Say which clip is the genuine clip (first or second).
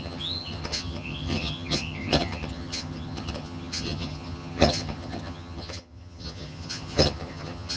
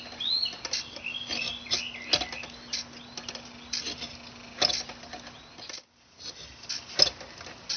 second